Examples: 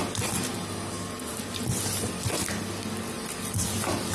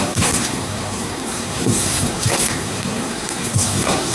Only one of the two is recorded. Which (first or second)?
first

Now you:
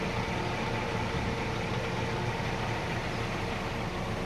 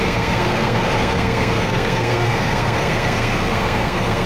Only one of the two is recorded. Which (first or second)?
first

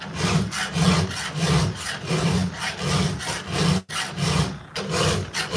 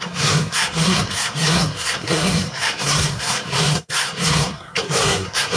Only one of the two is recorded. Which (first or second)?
first